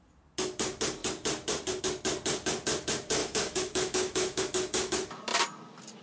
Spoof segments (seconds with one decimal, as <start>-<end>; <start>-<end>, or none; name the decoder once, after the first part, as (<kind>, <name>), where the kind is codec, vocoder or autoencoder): 3.2-4.4 (autoencoder, DAC-VAE)